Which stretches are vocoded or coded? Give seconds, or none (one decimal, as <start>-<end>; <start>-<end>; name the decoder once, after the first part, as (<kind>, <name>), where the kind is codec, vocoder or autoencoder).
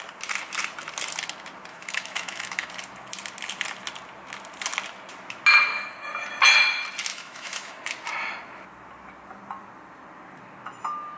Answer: 1.7-2.7 (autoencoder, DAC-VAE); 7.1-7.8